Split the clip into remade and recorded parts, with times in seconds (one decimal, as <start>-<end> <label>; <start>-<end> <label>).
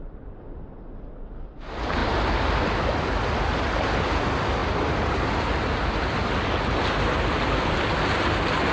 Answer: 0.0-8.7 recorded